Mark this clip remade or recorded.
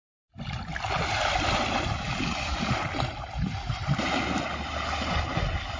recorded